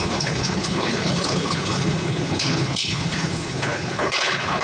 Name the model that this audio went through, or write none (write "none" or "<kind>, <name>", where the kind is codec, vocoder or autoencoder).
codec, HILCodec